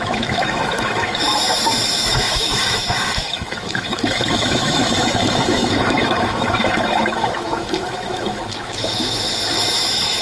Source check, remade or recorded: remade